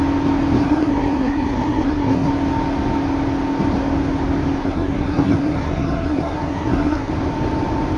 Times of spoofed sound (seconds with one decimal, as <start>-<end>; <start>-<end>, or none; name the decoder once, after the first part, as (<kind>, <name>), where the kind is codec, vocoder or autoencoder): 0.6-2.3 (codec, SNAC); 4.6-7.1